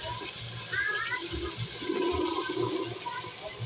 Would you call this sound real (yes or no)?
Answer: yes